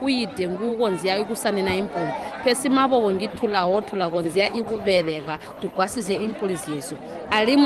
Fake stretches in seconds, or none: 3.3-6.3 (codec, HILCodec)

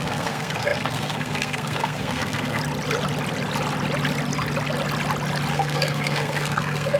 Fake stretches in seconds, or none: 0.0-2.6 (codec, SNAC); 5.5-7.0

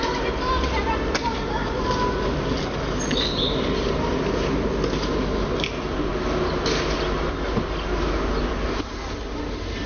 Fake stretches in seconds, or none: none

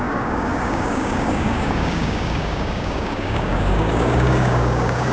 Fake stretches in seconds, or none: 0.0-5.1 (codec, DAC)

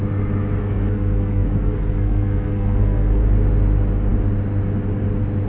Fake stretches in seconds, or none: 0.6-3.2 (codec, SNAC)

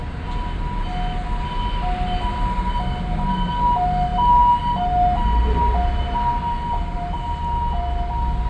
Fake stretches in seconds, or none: none

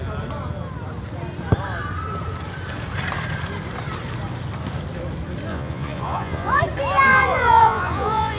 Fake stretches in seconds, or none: 5.5-6.6 (vocoder, Vocos); 7.1-8.4